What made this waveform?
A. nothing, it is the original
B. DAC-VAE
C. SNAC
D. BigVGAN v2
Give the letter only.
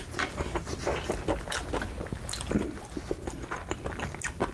A